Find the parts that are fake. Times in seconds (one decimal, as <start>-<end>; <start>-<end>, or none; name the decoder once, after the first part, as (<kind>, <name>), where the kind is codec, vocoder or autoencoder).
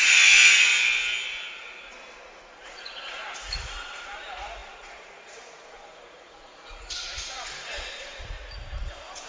0.0-0.7 (vocoder, Vocos); 1.6-9.3